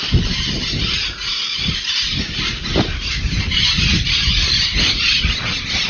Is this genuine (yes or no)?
yes